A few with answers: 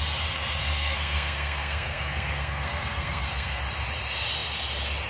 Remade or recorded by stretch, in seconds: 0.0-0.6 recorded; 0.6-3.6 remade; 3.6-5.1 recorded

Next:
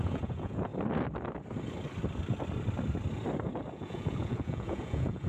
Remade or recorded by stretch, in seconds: 0.0-0.7 remade; 0.7-3.7 recorded; 3.7-5.3 remade

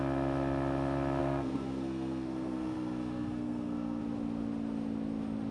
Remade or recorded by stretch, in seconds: 0.0-1.2 recorded; 1.2-4.0 remade; 4.0-5.5 recorded

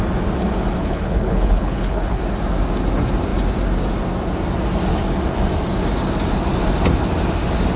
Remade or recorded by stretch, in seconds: 0.0-0.8 recorded; 0.8-2.2 remade; 2.2-7.8 recorded

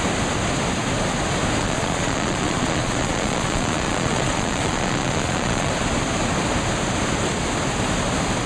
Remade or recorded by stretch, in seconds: 0.0-1.6 recorded; 1.6-5.7 remade; 5.7-8.5 recorded

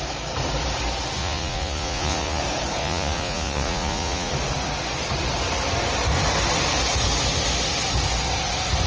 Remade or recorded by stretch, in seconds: 0.0-1.2 recorded; 1.2-2.4 remade; 2.4-2.8 recorded; 2.8-4.3 remade; 4.3-8.9 recorded

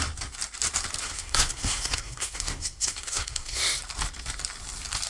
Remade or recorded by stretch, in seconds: 0.0-1.0 recorded; 1.0-3.8 remade; 3.8-5.1 recorded